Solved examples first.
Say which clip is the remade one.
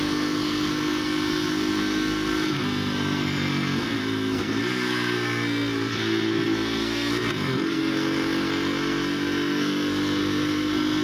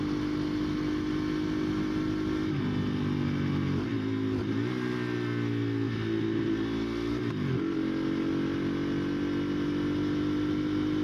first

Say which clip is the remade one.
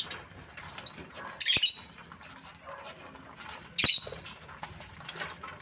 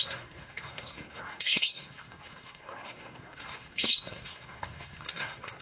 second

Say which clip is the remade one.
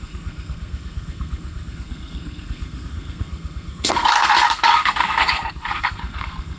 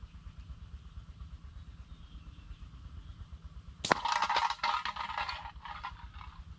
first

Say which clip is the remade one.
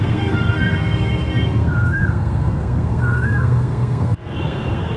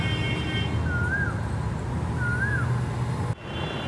first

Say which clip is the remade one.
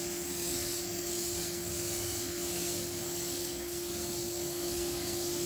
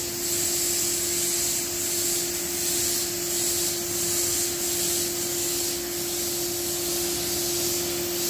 first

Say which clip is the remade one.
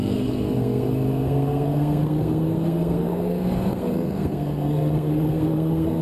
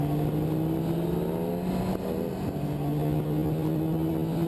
first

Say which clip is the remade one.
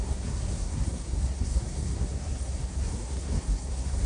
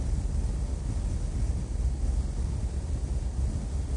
first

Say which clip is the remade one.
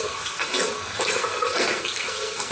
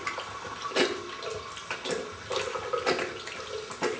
first